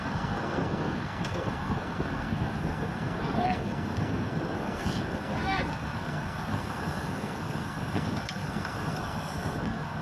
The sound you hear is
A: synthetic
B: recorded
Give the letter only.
A